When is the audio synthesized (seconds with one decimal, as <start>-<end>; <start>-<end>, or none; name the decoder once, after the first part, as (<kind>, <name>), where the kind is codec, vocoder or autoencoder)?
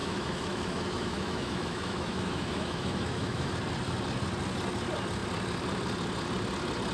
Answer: 0.0-3.5 (autoencoder, DAC-VAE)